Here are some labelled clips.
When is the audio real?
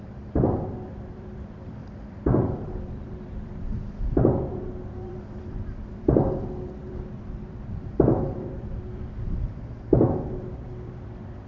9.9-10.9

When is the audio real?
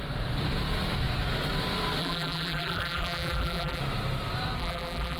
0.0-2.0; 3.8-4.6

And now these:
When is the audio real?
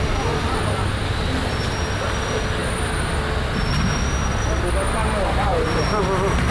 0.0-2.6; 3.1-5.5; 6.0-6.5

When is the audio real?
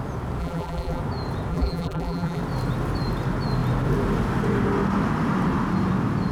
0.0-0.4; 1.0-1.5; 2.4-6.3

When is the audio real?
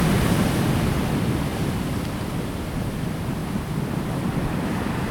0.0-5.1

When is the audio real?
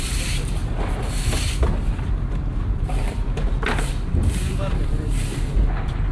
0.6-2.6; 5.3-6.1